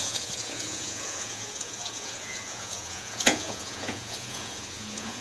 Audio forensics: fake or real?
fake